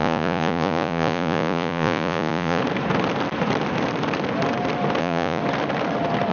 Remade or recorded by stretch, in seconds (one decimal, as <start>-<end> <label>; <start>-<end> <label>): 0.0-2.6 remade; 2.6-5.0 recorded; 5.0-5.4 remade; 5.4-6.3 recorded